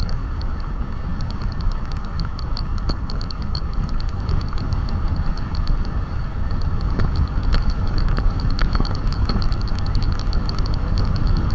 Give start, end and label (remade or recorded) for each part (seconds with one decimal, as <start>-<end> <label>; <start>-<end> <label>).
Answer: 0.0-11.5 remade